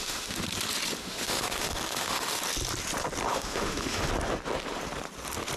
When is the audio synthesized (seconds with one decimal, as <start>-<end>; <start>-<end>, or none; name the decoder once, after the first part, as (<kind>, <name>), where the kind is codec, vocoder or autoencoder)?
0.0-0.4 (autoencoder, DAC-VAE); 1.0-2.4; 3.3-4.1